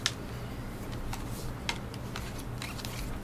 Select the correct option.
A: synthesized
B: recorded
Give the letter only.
B